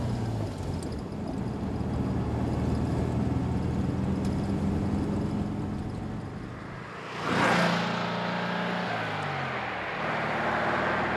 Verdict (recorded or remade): recorded